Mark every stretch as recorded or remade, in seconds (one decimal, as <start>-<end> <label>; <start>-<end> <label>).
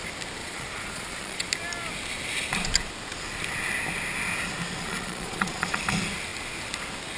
0.0-0.4 recorded; 0.4-1.5 remade; 1.5-4.8 recorded; 4.8-5.8 remade; 5.8-7.2 recorded